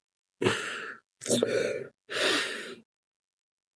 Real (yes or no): yes